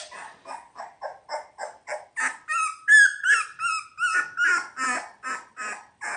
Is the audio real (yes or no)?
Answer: yes